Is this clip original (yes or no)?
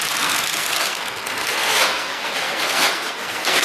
no